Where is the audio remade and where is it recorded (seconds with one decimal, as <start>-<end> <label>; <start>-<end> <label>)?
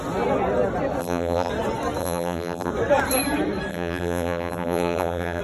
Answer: 0.0-1.0 recorded; 1.0-1.5 remade; 1.5-2.0 recorded; 2.0-2.7 remade; 2.7-3.7 recorded; 3.7-5.4 remade